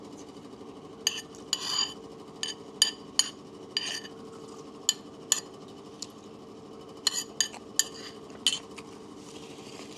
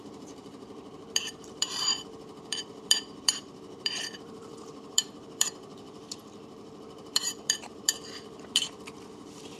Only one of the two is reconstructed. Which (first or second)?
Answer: second